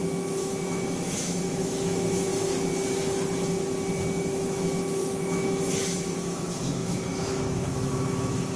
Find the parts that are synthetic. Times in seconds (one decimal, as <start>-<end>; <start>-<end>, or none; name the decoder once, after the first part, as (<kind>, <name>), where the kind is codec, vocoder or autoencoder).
0.0-2.3 (autoencoder, DAC-VAE); 4.2-8.6